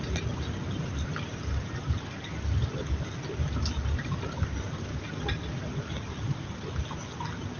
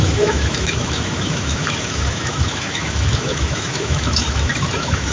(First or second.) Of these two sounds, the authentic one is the first